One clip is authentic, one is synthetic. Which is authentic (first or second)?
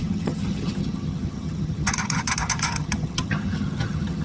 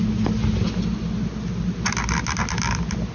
second